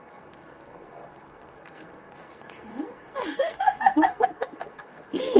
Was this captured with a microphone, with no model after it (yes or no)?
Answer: no